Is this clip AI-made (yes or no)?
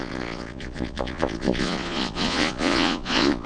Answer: yes